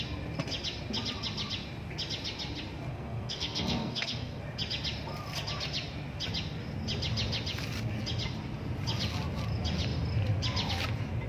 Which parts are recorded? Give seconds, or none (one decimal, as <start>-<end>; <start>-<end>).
0.0-2.9; 4.4-11.3